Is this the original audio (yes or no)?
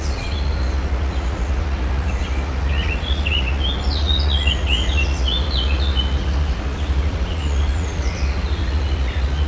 no